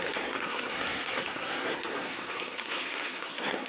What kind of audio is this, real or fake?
fake